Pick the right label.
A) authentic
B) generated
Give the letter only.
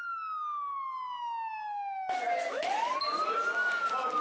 A